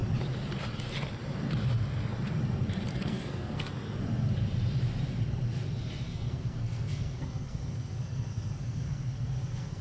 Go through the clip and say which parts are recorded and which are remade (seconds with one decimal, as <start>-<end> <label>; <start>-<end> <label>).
0.0-2.9 recorded; 2.9-3.7 remade; 3.7-6.1 recorded; 6.1-9.8 remade